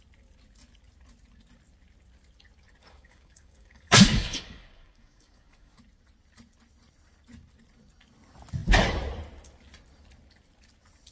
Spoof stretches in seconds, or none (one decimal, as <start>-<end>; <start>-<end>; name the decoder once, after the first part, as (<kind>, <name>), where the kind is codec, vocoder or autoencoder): 2.8-5.8 (codec, DAC)